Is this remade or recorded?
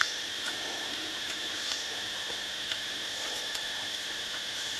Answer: remade